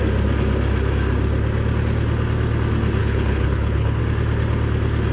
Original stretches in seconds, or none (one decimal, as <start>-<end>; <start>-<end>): 0.0-3.0; 4.0-5.1